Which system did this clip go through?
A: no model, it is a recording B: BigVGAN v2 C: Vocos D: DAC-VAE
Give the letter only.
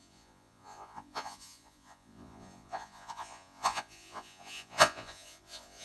C